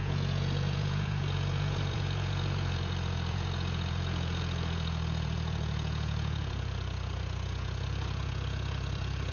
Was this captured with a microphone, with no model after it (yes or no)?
no